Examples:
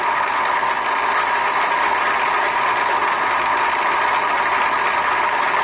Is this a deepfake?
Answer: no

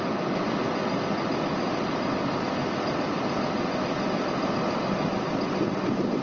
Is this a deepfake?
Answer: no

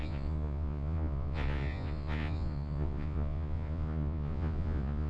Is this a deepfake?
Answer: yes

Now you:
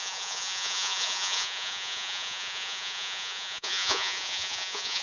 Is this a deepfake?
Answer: yes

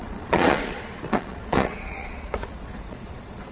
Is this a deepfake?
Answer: yes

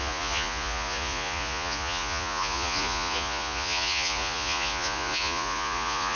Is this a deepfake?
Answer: yes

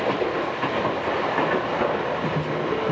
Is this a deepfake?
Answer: no